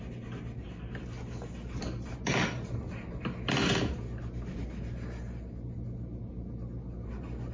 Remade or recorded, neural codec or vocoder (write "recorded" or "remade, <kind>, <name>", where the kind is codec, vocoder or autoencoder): recorded